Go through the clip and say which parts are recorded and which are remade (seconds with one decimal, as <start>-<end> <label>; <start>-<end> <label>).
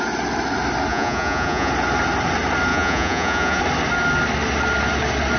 0.0-0.9 recorded; 0.9-1.7 remade; 1.7-2.7 recorded; 2.7-3.6 remade; 3.6-5.4 recorded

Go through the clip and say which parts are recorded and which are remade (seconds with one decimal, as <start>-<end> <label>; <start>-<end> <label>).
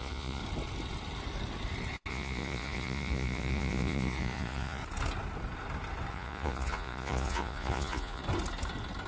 0.0-0.4 remade; 0.4-2.1 recorded; 2.1-4.8 remade; 4.8-6.1 recorded; 6.1-8.2 remade; 8.2-9.1 recorded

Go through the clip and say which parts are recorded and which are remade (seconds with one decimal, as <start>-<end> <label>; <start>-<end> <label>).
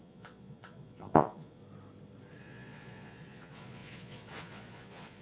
0.0-1.6 remade; 1.6-2.4 recorded; 2.4-5.2 remade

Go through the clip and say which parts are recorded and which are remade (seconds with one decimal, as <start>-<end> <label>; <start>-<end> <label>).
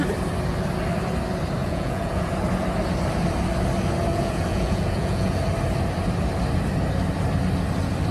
0.0-1.6 recorded; 1.6-2.3 remade; 2.3-4.1 recorded; 4.1-5.4 remade; 5.4-8.1 recorded